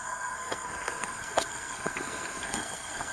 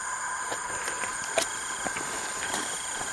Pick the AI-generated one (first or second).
first